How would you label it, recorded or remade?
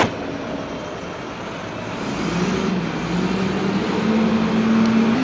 recorded